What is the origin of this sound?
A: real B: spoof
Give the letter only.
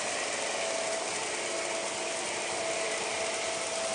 A